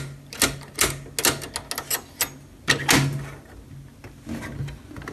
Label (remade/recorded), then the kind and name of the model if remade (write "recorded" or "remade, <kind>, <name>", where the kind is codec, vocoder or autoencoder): recorded